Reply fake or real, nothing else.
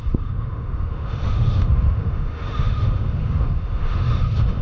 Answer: fake